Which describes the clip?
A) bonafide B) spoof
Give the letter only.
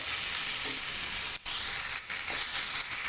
A